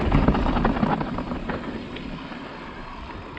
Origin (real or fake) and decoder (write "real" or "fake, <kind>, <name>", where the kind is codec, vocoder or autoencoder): real